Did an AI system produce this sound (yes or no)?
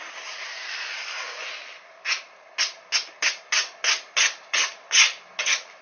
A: no